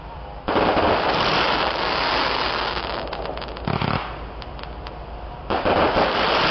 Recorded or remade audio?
recorded